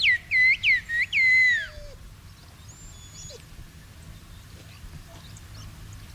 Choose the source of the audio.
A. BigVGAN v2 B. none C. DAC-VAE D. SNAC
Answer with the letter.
B